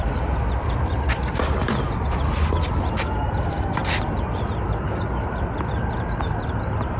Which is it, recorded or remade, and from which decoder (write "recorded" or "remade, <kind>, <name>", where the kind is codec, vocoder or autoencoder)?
recorded